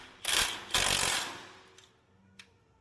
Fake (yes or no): no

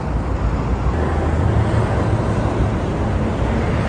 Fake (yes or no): no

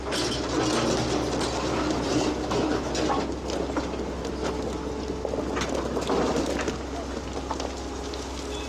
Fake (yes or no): no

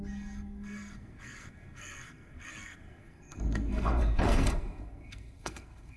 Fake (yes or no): yes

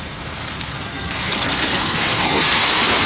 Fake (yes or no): yes